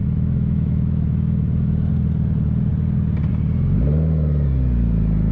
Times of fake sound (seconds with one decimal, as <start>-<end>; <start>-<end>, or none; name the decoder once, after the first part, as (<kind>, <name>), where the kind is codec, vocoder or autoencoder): 0.0-1.9 (autoencoder, DAC-VAE)